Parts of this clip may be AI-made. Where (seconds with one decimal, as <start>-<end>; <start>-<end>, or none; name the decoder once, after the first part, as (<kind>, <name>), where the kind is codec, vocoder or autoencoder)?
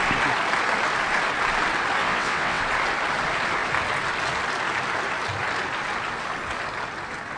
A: 2.0-2.6 (vocoder, WaveNeXt)